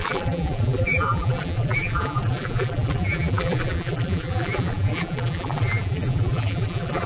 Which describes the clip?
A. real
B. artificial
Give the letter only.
B